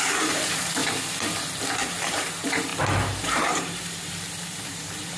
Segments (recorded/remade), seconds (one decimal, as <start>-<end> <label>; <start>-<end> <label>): 0.0-0.8 remade; 0.8-1.9 recorded; 1.9-5.2 remade